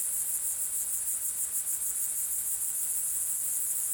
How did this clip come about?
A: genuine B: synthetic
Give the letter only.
A